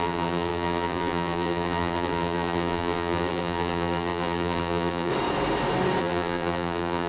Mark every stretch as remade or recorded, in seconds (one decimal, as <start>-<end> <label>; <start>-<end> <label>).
0.0-5.1 remade; 5.1-6.0 recorded; 6.0-7.1 remade